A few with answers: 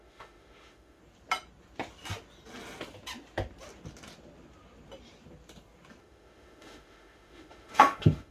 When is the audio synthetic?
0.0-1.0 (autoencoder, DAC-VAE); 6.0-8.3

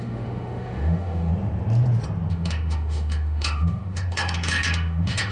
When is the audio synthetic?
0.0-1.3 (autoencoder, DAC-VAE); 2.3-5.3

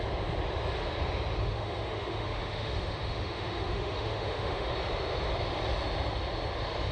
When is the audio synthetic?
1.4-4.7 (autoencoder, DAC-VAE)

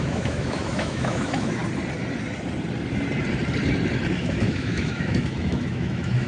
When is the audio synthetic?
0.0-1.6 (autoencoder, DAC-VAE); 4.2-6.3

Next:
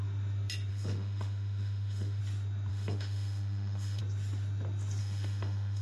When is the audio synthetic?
0.7-2.2 (autoencoder, DAC-VAE); 2.7-4.0; 5.0-5.8

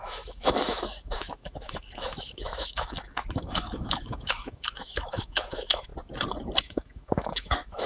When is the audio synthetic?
0.0-5.9 (autoencoder, DAC-VAE); 6.6-7.9

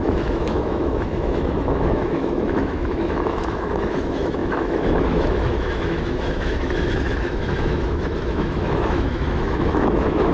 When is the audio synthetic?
0.0-10.3 (autoencoder, DAC-VAE)

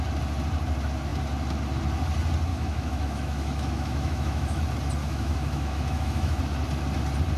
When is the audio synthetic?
2.5-4.6 (autoencoder, DAC-VAE); 5.0-6.4